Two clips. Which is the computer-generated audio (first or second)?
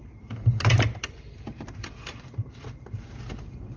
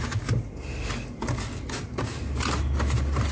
first